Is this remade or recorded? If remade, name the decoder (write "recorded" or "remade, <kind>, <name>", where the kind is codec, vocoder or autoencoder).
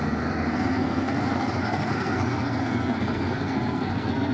remade, codec, SNAC